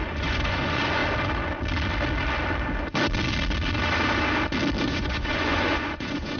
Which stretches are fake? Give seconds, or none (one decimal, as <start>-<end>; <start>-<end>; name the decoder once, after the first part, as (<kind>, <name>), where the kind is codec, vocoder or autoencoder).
0.0-1.0 (vocoder, Vocos); 4.8-6.4